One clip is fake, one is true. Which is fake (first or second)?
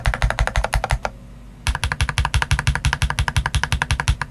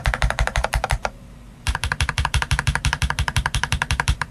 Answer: second